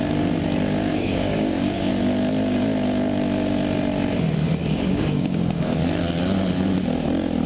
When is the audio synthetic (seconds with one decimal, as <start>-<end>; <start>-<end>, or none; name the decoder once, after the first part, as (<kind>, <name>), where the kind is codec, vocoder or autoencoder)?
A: 0.9-1.9 (codec, DAC); 4.6-5.8